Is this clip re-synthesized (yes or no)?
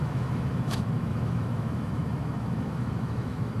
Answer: yes